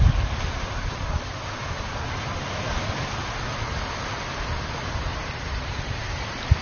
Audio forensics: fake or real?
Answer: real